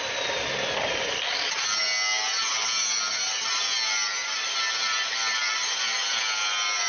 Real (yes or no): yes